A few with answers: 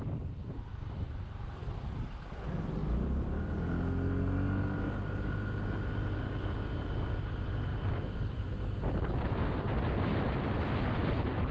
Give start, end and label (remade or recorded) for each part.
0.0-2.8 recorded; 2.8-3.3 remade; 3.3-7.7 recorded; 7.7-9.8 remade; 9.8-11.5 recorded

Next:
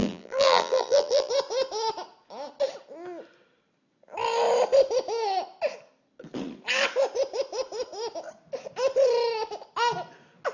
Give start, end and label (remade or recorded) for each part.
0.0-1.3 remade; 1.3-10.5 recorded